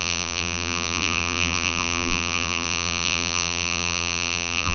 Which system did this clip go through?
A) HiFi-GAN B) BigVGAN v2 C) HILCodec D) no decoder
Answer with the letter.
B